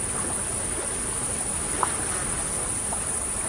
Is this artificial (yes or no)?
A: no